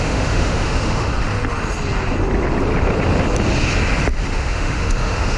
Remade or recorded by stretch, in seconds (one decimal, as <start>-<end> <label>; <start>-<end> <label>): 0.0-1.1 remade; 1.1-4.3 recorded; 4.3-5.4 remade